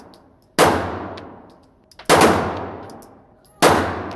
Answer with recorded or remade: recorded